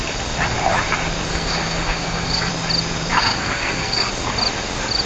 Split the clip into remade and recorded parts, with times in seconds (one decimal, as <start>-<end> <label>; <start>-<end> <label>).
0.0-1.3 recorded; 1.3-2.5 remade; 2.5-3.1 recorded; 3.1-4.1 remade; 4.1-5.1 recorded